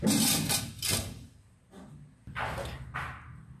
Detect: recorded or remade recorded